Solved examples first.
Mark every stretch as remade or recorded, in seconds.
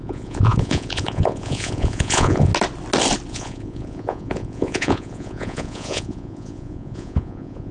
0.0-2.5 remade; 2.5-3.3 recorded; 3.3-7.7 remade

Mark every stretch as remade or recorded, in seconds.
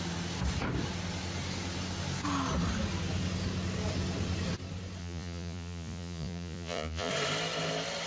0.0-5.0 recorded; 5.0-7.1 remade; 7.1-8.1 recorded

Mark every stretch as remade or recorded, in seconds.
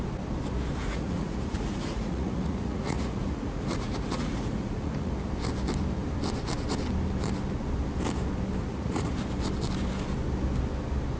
0.0-0.8 recorded; 0.8-5.1 remade; 5.1-8.6 recorded; 8.6-9.1 remade; 9.1-11.2 recorded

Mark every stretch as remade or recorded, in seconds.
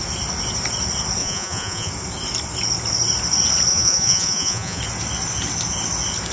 0.0-1.2 recorded; 1.2-1.9 remade; 1.9-3.7 recorded; 3.7-4.8 remade; 4.8-6.3 recorded